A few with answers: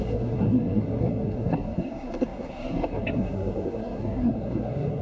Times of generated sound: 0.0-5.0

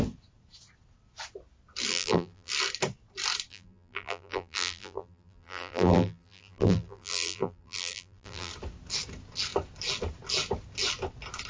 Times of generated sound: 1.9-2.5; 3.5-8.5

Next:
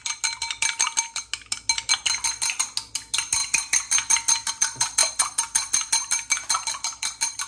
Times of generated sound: 5.0-7.5